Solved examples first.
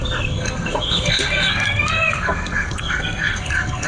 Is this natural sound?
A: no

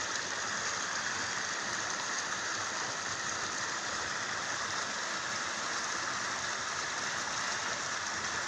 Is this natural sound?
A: yes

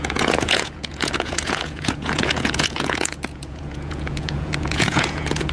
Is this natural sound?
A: no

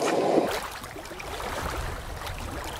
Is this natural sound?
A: no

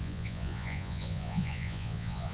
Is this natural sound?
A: no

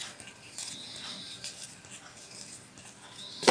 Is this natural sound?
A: yes